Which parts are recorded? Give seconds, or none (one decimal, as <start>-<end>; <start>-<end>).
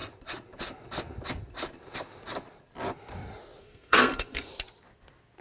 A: 0.0-3.6; 4.5-5.4